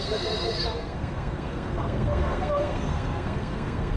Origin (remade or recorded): remade